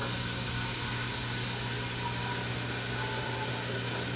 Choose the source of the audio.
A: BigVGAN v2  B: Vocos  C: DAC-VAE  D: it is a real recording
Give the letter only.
D